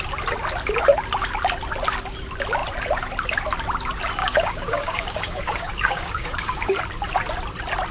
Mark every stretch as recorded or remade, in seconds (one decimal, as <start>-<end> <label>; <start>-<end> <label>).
0.0-4.2 recorded; 4.2-6.8 remade; 6.8-7.9 recorded